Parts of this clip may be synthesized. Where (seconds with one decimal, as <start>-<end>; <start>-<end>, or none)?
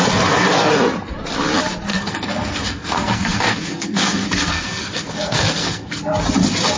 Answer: 1.9-6.0